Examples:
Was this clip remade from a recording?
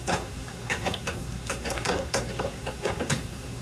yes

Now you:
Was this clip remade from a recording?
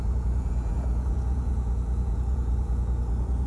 yes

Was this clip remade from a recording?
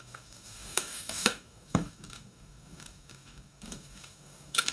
yes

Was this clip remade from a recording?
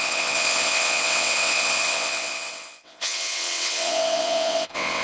yes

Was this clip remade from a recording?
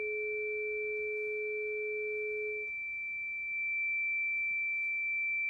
no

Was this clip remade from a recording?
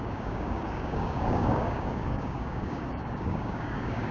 yes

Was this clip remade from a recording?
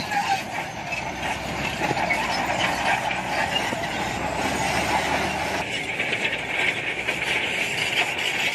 no